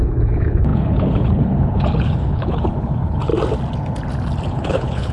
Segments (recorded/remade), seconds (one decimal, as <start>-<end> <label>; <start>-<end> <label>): 0.0-3.3 remade; 3.3-4.5 recorded; 4.5-5.1 remade